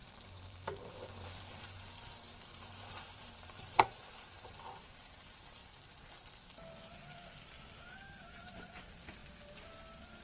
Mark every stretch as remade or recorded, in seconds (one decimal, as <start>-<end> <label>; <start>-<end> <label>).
0.0-5.6 remade; 5.6-7.8 recorded; 7.8-9.2 remade; 9.2-10.2 recorded